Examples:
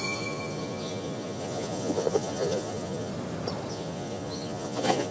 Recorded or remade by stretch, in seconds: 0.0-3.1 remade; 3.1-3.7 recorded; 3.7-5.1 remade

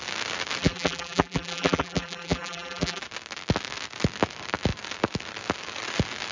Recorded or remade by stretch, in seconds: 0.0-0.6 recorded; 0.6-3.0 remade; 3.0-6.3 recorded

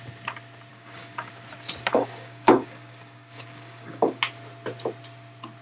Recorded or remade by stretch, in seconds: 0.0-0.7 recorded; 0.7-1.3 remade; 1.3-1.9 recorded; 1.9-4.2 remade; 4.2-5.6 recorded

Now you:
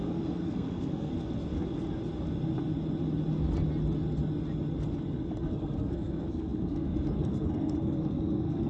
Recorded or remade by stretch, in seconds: 0.0-1.1 remade; 1.1-5.1 recorded; 5.1-8.7 remade

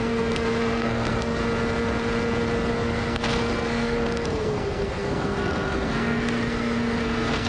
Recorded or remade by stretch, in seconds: 0.0-1.4 remade; 1.4-2.7 recorded; 2.7-7.5 remade

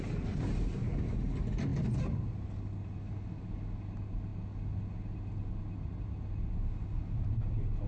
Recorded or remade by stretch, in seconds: 0.0-7.9 recorded

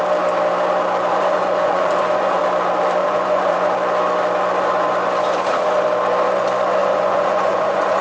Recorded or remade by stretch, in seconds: 0.0-1.1 recorded; 1.1-2.4 remade; 2.4-3.0 recorded; 3.0-3.7 remade; 3.7-6.8 recorded; 6.8-8.0 remade

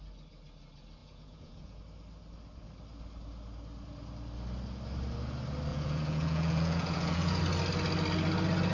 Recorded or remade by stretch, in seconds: 0.0-1.0 recorded; 1.0-1.8 remade; 1.8-5.7 recorded; 5.7-7.4 remade; 7.4-8.7 recorded